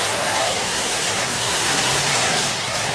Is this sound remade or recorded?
remade